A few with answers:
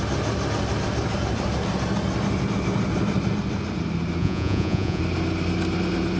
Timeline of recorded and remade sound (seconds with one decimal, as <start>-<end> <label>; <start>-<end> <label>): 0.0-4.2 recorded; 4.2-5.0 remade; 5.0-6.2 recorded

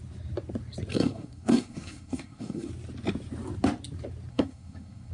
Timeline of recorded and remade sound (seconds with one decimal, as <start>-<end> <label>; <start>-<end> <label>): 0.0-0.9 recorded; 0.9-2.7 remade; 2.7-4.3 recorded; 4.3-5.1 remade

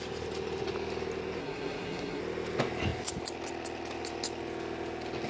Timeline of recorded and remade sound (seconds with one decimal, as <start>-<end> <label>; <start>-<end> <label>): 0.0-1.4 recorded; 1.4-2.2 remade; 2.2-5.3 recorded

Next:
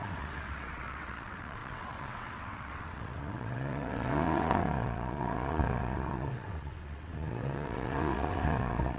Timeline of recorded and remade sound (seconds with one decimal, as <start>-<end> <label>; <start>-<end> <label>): 0.0-9.0 remade

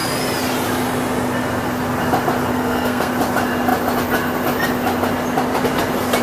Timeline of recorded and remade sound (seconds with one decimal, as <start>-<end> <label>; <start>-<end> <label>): 0.0-2.5 recorded; 2.5-3.1 remade; 3.1-6.2 recorded